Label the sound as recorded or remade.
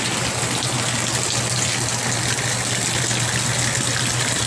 recorded